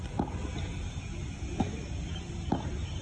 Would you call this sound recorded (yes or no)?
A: yes